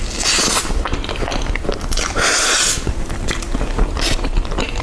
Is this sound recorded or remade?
recorded